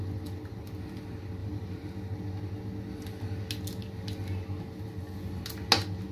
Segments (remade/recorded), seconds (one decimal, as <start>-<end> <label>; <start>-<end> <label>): 0.0-1.4 recorded; 1.4-1.9 remade; 1.9-6.1 recorded